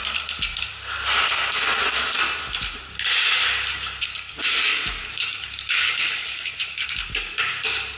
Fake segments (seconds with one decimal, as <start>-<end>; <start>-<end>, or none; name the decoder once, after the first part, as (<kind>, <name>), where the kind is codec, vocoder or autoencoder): 3.7-7.5 (codec, DAC)